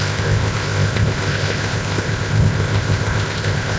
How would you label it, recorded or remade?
remade